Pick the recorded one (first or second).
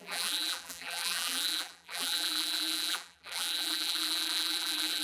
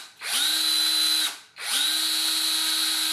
second